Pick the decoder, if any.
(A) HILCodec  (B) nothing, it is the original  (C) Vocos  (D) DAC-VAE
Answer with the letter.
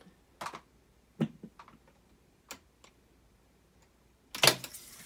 B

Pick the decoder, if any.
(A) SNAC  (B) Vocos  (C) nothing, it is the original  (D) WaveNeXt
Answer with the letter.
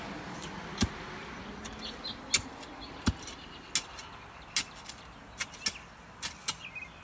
C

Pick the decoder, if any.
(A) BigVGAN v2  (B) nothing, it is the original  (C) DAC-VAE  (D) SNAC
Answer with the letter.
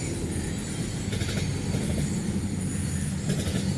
B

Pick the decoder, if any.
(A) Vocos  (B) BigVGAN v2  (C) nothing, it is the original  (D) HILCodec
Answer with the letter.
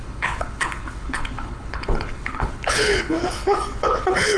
D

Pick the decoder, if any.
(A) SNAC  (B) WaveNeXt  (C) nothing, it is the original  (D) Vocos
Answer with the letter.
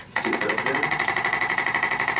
B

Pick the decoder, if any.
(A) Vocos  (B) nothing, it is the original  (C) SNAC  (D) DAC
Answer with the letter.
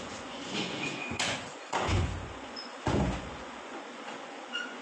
A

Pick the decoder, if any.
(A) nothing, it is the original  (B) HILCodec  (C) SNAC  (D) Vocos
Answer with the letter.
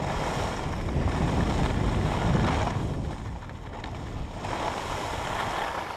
A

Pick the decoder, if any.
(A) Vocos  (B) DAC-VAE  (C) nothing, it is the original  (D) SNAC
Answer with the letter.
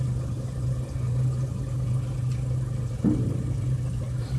C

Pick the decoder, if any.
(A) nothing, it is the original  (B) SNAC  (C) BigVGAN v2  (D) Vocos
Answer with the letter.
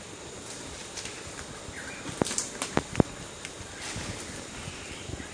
A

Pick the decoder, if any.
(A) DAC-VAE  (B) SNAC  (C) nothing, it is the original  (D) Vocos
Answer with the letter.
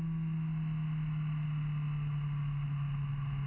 C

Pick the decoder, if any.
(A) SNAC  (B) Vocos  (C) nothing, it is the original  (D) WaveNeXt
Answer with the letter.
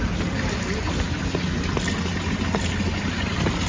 C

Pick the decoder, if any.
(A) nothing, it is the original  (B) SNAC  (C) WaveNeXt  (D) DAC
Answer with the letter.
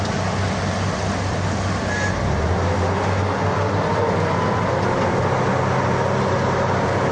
A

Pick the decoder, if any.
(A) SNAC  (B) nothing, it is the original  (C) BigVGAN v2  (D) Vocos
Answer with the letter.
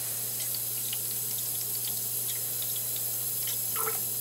B